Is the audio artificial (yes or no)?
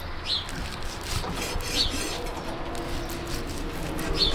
no